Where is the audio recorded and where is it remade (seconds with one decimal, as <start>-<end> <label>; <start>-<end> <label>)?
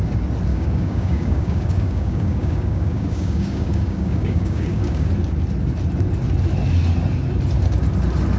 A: 0.0-0.5 recorded; 0.5-5.1 remade; 5.1-8.4 recorded